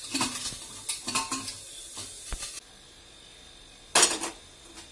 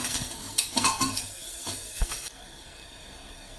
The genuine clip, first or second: first